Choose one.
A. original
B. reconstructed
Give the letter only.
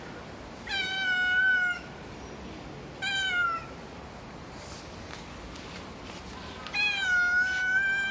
A